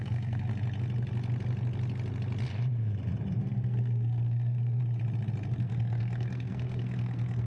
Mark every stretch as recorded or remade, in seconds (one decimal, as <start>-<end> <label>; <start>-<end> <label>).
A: 0.0-0.5 remade; 0.5-3.4 recorded; 3.4-4.8 remade; 4.8-5.6 recorded; 5.6-7.5 remade